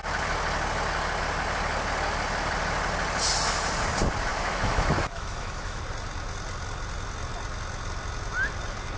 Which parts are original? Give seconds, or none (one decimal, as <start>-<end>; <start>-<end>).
0.0-4.3; 5.8-9.0